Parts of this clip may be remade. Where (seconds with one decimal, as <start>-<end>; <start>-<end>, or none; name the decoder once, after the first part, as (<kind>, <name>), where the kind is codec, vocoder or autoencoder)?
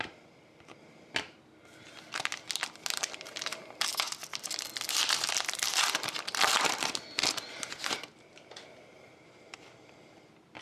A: none